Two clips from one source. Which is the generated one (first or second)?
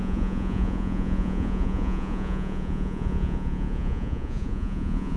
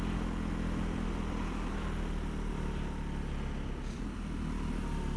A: first